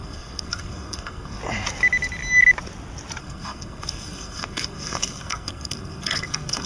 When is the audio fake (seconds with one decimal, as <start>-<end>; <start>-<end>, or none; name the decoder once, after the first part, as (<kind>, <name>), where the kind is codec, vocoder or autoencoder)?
0.0-1.4 (codec, SNAC); 3.2-6.7